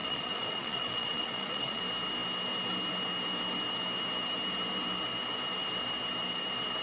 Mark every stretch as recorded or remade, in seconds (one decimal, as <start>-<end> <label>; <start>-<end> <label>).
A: 0.0-1.8 remade; 1.8-6.8 recorded